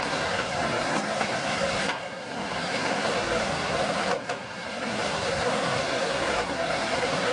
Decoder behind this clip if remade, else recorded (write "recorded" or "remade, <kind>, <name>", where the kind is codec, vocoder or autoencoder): remade, codec, SNAC